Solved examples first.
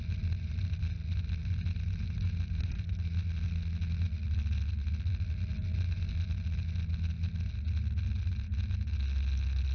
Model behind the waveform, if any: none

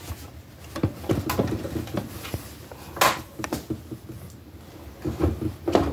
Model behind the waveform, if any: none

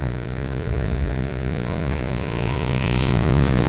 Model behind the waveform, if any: vocoder, Vocos